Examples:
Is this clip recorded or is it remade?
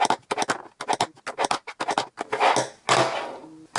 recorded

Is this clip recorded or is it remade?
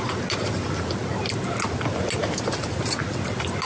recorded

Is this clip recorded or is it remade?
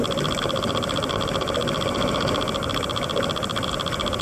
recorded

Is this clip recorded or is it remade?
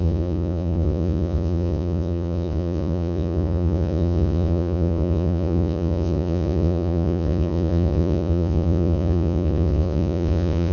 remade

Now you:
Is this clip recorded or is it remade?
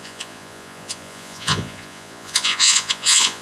remade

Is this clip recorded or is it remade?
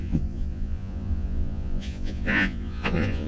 remade